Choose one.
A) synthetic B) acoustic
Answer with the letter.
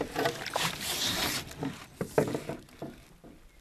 B